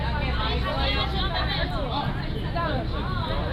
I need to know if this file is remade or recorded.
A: recorded